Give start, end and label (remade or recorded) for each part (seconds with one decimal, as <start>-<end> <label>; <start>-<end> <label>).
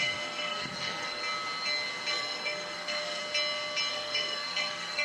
0.0-1.2 remade; 1.2-2.1 recorded; 2.1-3.2 remade; 3.2-3.9 recorded; 3.9-5.0 remade